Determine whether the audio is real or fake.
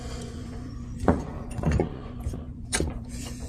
fake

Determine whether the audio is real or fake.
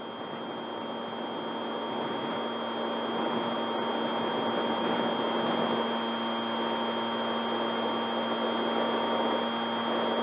real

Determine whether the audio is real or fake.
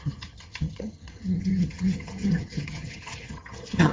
fake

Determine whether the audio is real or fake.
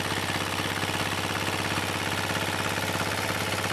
real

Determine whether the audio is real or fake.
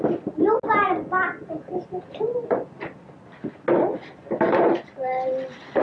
real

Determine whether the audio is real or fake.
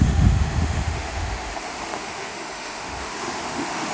fake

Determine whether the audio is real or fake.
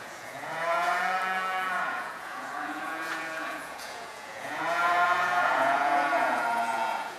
fake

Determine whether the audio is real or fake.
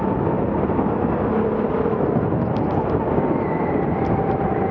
real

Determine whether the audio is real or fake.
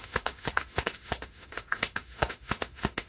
fake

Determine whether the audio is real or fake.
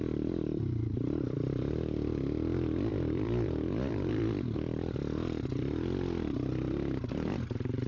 fake